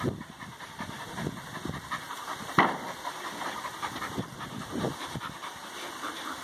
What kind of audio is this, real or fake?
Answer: fake